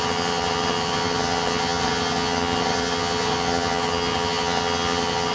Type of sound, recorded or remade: remade